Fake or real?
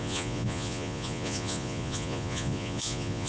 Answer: fake